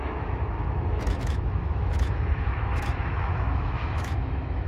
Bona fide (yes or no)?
no